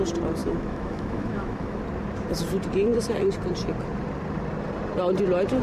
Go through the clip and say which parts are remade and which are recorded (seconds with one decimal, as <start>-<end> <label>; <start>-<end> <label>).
0.0-0.4 recorded; 0.4-1.8 remade; 1.8-5.6 recorded